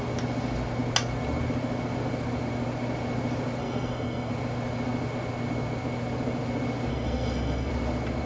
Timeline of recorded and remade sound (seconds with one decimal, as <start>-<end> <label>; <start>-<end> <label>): 0.0-3.6 recorded; 3.6-4.3 remade; 4.3-6.9 recorded; 6.9-7.7 remade; 7.7-8.3 recorded